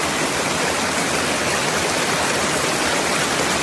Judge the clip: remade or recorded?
recorded